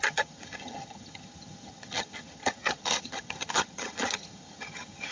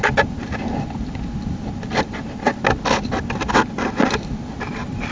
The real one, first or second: second